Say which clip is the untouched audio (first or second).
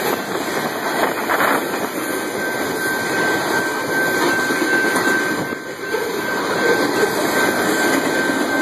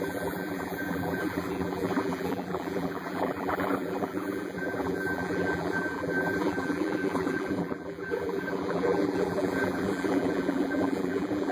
first